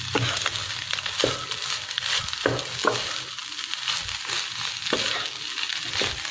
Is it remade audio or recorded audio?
recorded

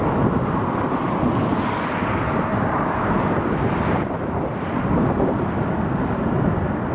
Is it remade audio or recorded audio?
recorded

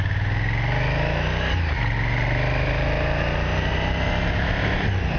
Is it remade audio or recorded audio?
recorded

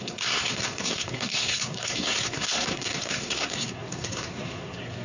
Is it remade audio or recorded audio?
remade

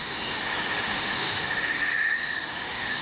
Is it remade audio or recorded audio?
remade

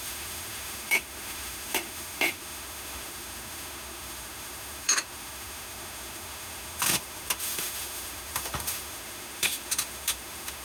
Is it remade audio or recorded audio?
remade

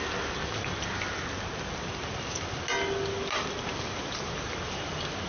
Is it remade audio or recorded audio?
recorded